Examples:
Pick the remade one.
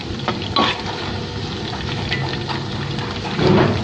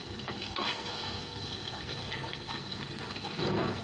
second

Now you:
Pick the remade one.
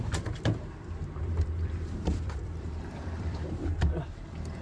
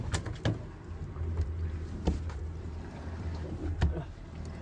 first